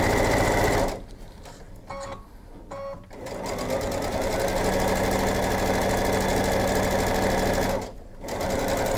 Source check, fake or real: real